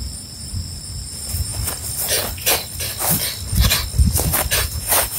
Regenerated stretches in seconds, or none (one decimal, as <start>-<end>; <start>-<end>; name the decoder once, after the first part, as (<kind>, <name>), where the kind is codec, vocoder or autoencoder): 0.0-1.5 (vocoder, BigVGAN v2); 4.6-5.2